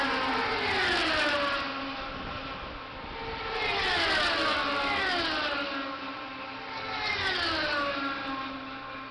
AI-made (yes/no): no